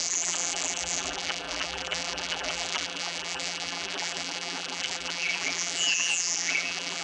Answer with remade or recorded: remade